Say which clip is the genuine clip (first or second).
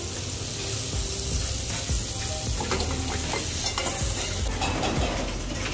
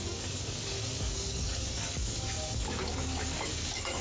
first